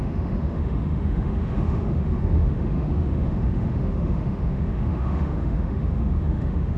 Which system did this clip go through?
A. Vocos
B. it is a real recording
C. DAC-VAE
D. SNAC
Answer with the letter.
C